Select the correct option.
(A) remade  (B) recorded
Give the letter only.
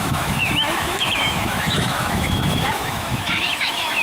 A